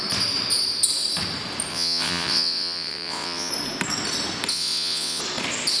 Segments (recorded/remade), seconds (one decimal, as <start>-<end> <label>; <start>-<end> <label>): 0.0-1.7 recorded; 1.7-3.5 remade; 3.5-4.5 recorded; 4.5-5.2 remade; 5.2-5.8 recorded